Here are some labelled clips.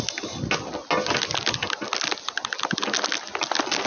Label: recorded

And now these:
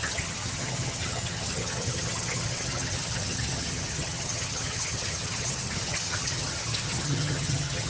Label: remade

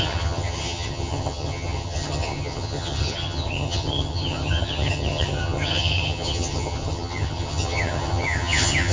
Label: remade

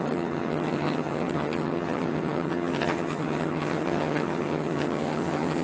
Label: remade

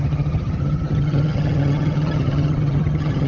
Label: remade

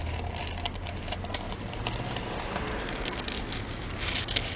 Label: recorded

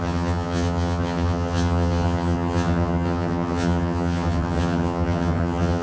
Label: remade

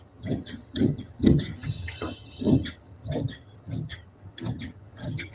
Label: remade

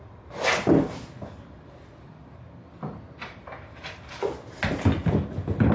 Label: recorded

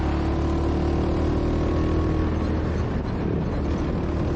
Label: recorded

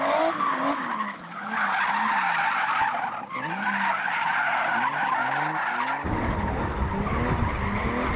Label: recorded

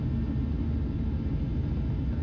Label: recorded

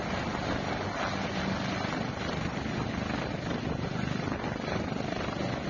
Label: recorded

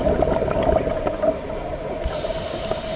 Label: recorded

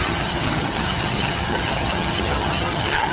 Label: remade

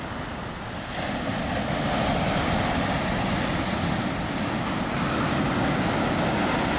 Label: recorded